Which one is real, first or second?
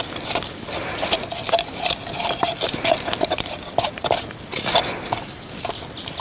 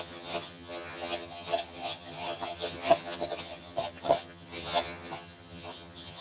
first